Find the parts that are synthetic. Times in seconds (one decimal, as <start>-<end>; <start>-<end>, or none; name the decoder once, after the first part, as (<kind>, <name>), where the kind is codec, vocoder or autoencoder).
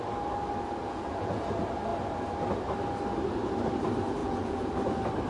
0.8-1.4 (vocoder, Vocos); 4.2-4.7